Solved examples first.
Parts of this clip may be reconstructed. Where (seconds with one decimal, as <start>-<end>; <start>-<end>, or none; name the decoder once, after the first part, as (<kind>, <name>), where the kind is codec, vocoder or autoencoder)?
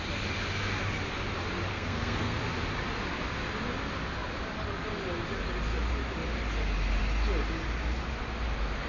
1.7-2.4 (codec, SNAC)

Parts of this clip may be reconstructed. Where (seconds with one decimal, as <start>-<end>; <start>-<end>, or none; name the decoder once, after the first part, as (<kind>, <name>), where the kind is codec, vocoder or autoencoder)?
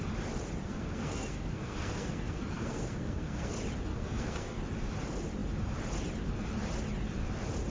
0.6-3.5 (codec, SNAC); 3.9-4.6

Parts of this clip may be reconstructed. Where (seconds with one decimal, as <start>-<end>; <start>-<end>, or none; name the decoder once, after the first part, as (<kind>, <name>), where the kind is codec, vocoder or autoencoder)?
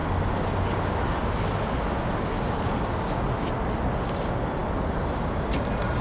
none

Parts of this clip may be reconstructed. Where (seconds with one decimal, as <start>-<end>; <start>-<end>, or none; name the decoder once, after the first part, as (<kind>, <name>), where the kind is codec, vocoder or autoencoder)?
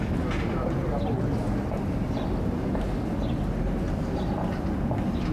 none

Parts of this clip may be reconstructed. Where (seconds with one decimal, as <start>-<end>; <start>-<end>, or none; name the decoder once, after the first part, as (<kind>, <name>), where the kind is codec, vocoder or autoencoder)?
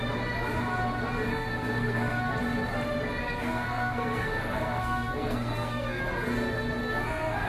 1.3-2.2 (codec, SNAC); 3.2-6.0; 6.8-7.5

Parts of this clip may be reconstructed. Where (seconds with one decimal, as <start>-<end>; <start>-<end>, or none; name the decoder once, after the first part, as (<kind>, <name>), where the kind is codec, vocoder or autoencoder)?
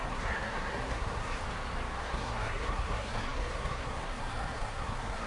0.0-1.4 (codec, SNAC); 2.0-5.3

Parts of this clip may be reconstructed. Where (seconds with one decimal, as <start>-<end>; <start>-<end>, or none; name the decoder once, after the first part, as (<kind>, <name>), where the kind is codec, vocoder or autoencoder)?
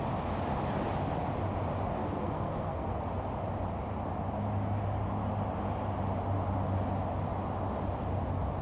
2.0-3.0 (codec, SNAC)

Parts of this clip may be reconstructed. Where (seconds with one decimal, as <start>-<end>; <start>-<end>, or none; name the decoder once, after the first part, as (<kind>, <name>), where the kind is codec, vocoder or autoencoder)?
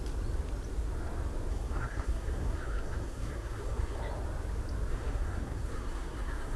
1.5-4.0 (codec, SNAC); 4.9-6.6